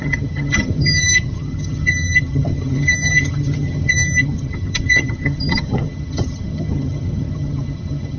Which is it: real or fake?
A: fake